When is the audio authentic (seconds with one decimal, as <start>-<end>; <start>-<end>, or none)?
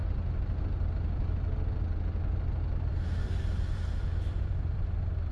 0.0-2.9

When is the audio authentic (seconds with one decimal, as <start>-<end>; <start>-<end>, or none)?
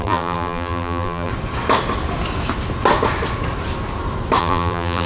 1.3-4.4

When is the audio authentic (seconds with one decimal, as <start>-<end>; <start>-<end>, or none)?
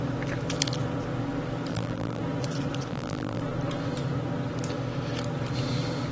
0.0-1.7; 2.2-2.9; 3.4-6.1